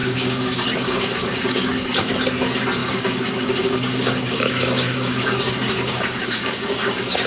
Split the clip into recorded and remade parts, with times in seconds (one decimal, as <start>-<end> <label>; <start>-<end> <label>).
0.0-2.1 remade; 2.1-2.8 recorded; 2.8-7.3 remade